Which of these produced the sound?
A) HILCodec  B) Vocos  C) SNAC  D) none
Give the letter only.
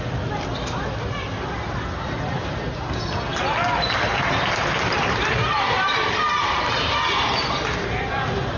D